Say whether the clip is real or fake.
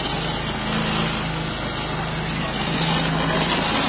real